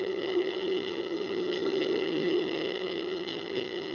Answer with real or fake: fake